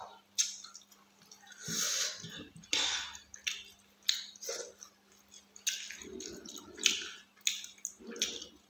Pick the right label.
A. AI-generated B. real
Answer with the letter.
B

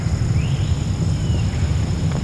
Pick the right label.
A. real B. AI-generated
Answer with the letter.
A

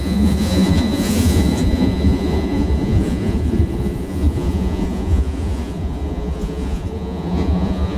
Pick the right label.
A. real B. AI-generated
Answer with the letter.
B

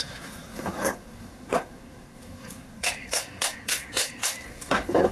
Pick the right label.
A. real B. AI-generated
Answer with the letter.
B